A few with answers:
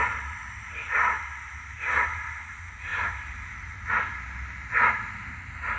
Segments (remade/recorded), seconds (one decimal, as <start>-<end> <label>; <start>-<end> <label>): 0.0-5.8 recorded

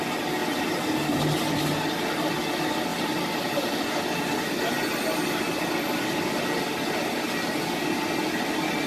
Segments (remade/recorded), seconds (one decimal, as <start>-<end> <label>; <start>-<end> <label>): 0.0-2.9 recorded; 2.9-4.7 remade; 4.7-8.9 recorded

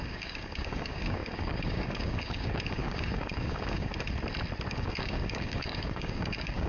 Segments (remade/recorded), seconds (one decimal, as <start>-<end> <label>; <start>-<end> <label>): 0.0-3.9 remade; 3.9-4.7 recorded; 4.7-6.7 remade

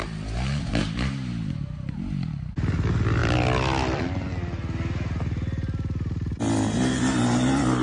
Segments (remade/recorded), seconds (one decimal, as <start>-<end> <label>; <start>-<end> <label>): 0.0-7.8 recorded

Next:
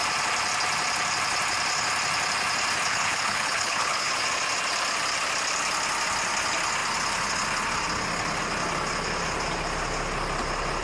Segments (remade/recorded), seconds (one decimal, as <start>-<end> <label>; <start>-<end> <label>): 0.0-2.9 recorded; 2.9-4.1 remade; 4.1-10.8 recorded

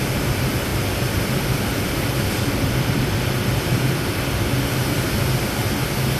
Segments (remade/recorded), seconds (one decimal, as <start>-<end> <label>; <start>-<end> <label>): 0.0-6.2 recorded

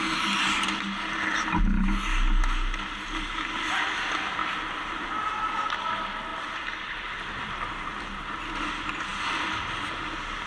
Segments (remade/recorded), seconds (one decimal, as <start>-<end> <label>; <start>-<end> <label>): 0.0-4.4 recorded; 4.4-5.1 remade; 5.1-6.3 recorded; 6.3-8.4 remade; 8.4-10.5 recorded

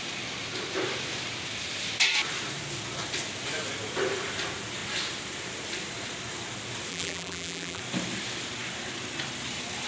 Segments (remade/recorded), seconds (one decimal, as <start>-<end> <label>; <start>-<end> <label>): 0.0-6.9 recorded; 6.9-7.8 remade; 7.8-9.9 recorded